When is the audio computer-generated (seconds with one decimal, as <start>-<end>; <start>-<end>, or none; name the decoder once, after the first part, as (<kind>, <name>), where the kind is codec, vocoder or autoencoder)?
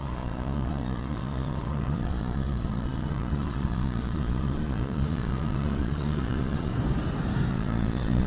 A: 0.0-6.7 (vocoder, Vocos); 7.5-8.3